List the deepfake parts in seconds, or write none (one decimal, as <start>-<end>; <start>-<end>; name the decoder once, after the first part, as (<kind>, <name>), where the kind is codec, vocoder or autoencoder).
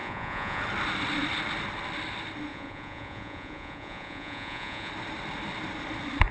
0.0-0.6 (vocoder, Vocos); 2.5-4.9